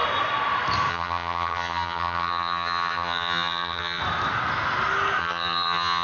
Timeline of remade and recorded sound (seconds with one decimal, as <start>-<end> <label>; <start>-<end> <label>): 0.0-0.9 recorded; 0.9-4.0 remade; 4.0-5.2 recorded; 5.2-6.0 remade